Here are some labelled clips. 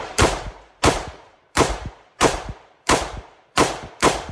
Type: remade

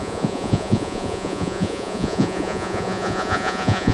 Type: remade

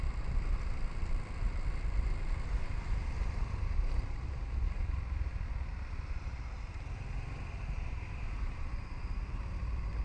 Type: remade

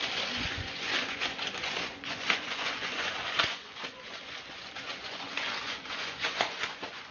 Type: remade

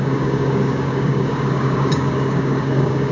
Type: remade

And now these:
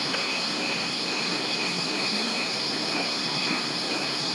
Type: remade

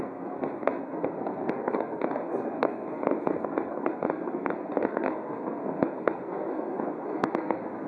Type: remade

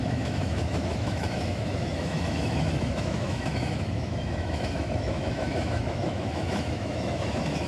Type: remade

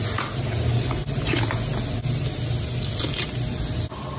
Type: recorded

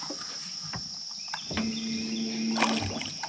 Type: recorded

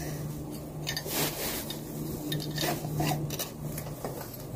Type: recorded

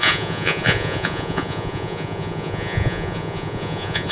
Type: remade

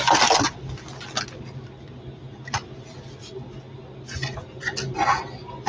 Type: recorded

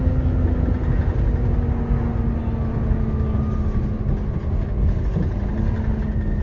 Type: recorded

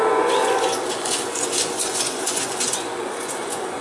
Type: remade